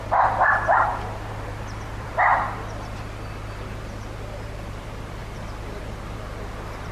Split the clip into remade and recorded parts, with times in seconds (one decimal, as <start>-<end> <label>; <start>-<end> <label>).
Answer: 0.0-0.9 remade; 0.9-1.8 recorded; 1.8-2.3 remade; 2.3-4.7 recorded; 4.7-5.2 remade; 5.2-5.8 recorded; 5.8-6.9 remade